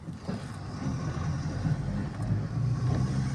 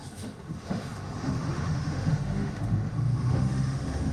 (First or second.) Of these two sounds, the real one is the first